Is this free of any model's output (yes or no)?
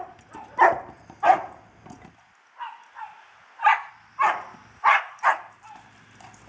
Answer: yes